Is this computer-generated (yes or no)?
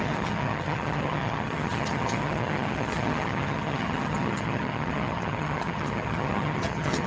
yes